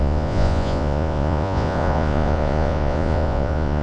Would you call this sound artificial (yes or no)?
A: yes